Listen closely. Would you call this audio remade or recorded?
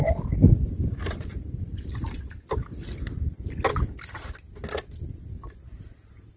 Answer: remade